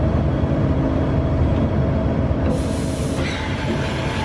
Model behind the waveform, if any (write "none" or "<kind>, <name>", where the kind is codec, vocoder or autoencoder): none